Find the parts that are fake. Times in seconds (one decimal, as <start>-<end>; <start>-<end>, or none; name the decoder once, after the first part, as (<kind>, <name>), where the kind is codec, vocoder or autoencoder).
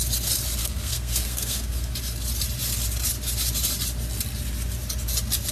0.6-1.9 (codec, SNAC)